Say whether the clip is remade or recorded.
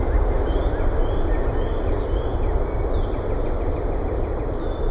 recorded